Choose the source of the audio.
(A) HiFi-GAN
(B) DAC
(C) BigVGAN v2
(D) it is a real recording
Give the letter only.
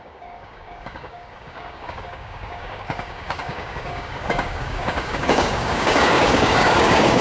B